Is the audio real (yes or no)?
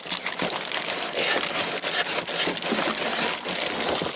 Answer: yes